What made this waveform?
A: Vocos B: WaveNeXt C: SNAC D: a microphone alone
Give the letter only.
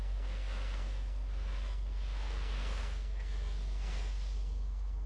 C